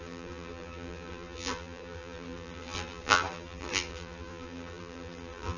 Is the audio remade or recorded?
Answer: remade